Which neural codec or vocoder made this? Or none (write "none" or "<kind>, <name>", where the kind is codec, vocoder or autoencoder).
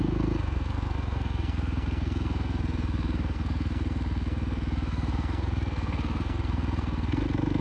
codec, SNAC